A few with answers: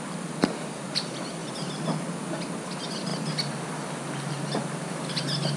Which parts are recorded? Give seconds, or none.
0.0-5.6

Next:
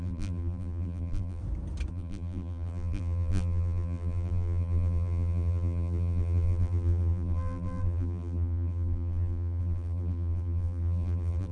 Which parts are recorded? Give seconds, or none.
1.4-1.9

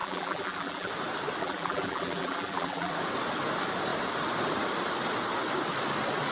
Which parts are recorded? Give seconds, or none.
0.9-1.4; 2.9-6.3

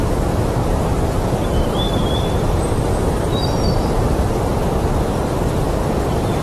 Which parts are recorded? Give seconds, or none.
0.0-0.6; 4.4-6.4

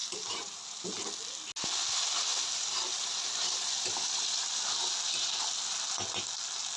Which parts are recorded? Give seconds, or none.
0.8-2.3; 4.8-6.8

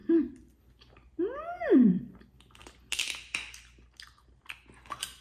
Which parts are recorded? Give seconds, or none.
1.9-5.2

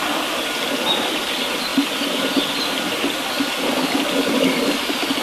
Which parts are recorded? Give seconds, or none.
0.0-1.7; 4.8-5.2